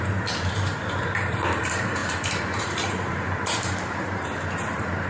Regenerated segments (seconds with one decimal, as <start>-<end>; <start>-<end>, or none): 0.0-5.1